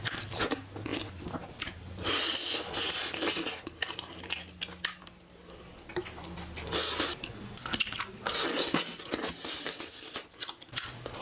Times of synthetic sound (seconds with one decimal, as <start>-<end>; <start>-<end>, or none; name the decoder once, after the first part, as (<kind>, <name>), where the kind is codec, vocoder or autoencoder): 0.9-2.8 (vocoder, BigVGAN v2)